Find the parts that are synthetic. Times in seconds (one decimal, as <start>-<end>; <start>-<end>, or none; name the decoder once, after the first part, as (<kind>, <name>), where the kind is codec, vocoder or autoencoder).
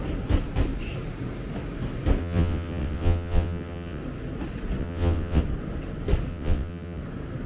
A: 2.2-4.0 (vocoder, WaveNeXt); 4.8-5.4; 6.3-7.0